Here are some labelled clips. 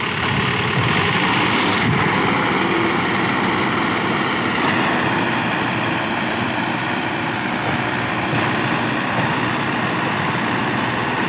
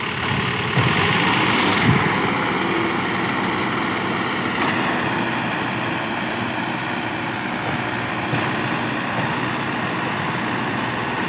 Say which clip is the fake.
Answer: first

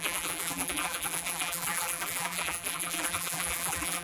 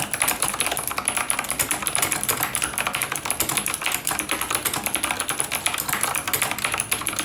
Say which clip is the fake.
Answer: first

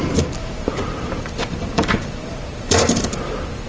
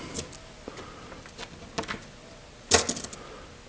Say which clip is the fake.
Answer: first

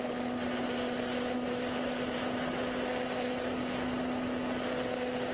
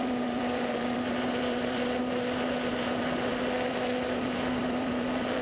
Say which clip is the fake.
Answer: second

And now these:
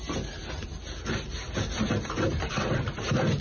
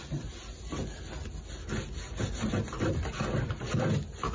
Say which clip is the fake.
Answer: first